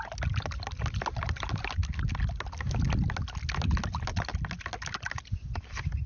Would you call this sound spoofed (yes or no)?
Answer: no